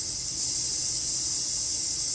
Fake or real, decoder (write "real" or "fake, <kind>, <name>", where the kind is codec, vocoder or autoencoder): real